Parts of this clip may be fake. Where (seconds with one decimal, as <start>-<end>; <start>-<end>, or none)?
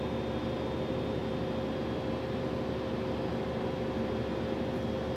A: none